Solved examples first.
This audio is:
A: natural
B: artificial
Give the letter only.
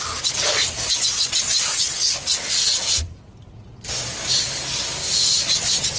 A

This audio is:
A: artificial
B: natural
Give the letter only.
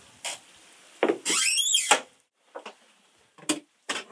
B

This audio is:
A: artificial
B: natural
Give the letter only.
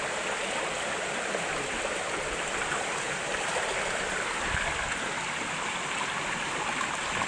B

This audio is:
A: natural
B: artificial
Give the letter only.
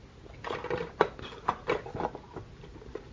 A